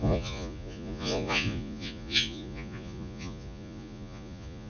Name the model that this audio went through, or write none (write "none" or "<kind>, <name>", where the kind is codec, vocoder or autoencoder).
vocoder, Vocos